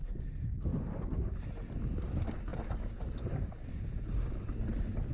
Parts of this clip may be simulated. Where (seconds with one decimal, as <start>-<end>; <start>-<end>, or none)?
none

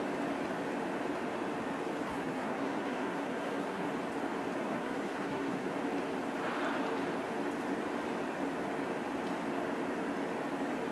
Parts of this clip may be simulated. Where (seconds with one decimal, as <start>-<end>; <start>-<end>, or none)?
2.1-3.9; 4.6-5.7